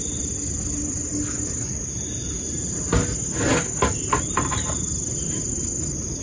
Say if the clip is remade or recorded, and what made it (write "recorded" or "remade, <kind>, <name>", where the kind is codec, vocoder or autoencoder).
recorded